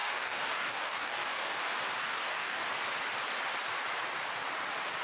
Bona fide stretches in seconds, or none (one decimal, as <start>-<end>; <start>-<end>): 1.6-2.0; 2.6-5.0